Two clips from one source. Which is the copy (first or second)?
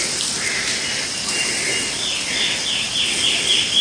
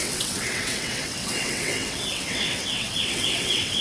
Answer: second